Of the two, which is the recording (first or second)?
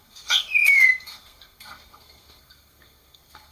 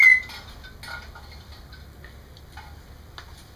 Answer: second